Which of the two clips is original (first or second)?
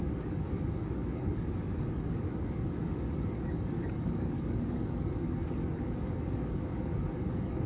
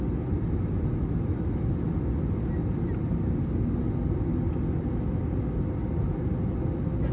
second